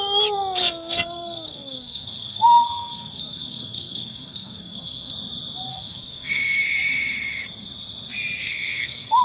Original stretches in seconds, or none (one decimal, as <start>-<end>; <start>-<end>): 0.0-0.6; 5.1-5.7; 6.6-8.4